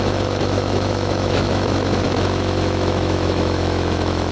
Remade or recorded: remade